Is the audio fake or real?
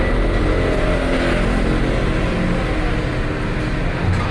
real